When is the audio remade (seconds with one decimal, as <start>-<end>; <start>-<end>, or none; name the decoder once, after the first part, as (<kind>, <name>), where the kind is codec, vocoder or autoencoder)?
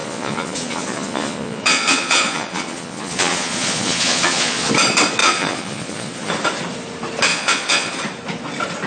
0.0-4.7 (vocoder, Vocos); 5.2-6.3; 7.3-8.0